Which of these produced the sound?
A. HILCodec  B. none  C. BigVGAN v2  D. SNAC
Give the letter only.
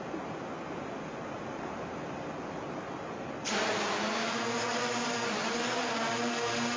B